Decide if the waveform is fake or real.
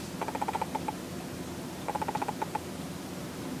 real